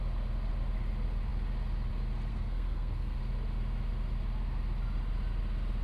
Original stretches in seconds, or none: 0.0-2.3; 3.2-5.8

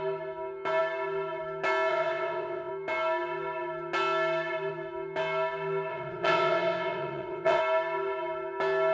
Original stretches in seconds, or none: 0.0-1.9; 2.7-5.9; 7.6-8.9

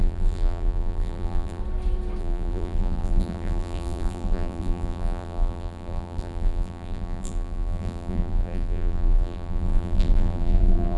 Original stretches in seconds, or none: 1.6-2.2

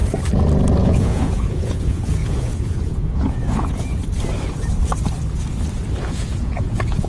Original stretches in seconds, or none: 0.0-0.8; 4.0-6.0

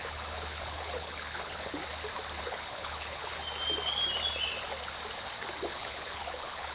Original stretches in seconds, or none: 1.8-2.4; 3.4-5.7

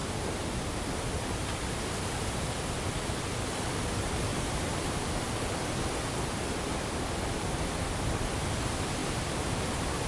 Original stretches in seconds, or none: 0.0-4.3; 5.1-9.0

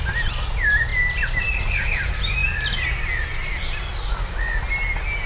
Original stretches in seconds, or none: 0.0-5.3

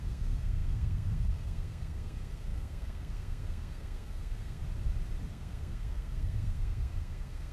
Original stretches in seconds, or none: 4.6-5.3